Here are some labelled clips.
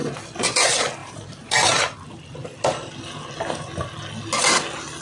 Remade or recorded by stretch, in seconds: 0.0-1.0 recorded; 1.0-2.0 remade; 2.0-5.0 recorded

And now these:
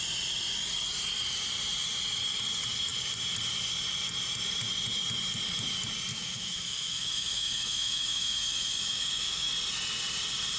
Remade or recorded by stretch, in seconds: 0.0-6.1 recorded; 6.1-9.5 remade; 9.5-10.6 recorded

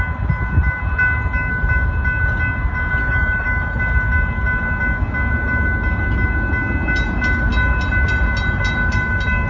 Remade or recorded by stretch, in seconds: 0.0-3.0 recorded; 3.0-3.8 remade; 3.8-9.5 recorded

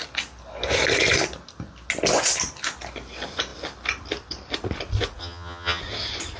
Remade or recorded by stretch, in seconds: 0.0-5.2 recorded; 5.2-5.8 remade; 5.8-6.4 recorded